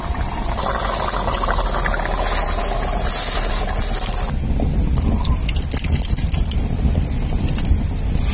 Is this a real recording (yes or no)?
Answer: yes